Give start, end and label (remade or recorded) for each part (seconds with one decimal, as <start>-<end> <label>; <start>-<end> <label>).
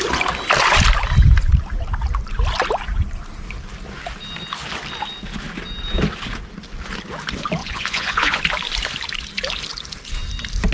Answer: 0.0-7.6 recorded; 7.6-8.4 remade; 8.4-10.7 recorded